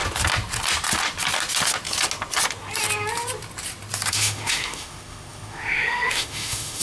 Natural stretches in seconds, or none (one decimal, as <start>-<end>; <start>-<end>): 0.0-4.1